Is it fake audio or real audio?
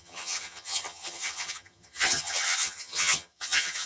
fake